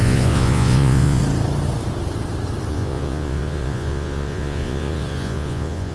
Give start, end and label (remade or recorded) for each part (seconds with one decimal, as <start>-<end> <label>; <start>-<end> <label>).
0.0-1.2 remade; 1.2-2.7 recorded; 2.7-5.9 remade